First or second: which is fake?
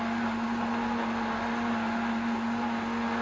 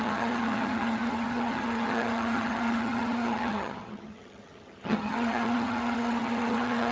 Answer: second